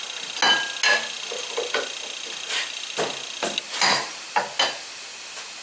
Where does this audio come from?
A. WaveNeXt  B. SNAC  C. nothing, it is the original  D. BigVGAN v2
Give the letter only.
C